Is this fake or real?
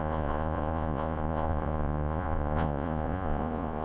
fake